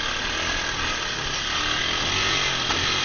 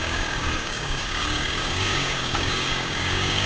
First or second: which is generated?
second